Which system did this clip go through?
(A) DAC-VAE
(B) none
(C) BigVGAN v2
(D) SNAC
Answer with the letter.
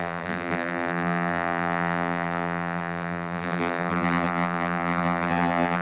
C